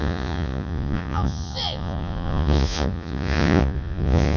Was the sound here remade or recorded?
remade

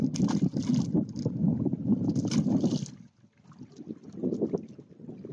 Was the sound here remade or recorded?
recorded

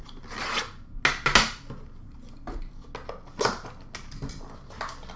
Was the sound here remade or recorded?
recorded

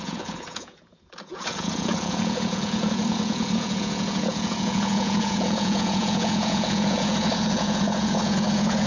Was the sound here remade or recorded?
remade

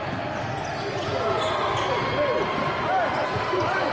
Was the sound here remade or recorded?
recorded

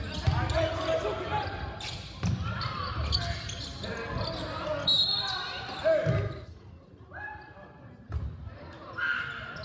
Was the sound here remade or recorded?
recorded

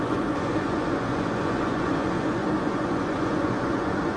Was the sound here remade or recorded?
remade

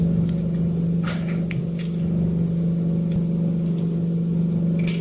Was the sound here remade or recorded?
recorded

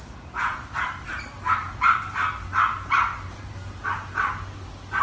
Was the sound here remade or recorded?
recorded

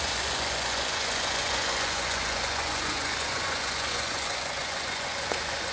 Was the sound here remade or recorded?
remade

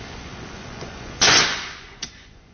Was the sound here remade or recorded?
remade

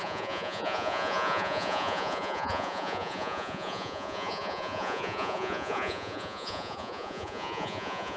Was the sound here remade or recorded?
remade